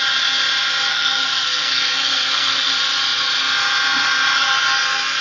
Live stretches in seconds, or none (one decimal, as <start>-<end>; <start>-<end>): 0.0-0.9; 2.7-5.2